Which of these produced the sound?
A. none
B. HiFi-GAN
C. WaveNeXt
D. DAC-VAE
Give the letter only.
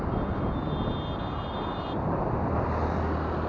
A